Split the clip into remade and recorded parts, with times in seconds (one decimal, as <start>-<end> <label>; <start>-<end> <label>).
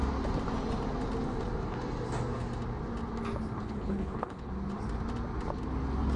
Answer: 0.0-3.6 recorded; 3.6-4.5 remade; 4.5-6.2 recorded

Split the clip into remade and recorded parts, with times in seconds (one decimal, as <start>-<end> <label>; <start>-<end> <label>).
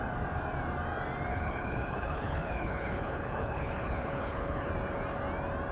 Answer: 0.0-1.3 recorded; 1.3-4.7 remade; 4.7-5.7 recorded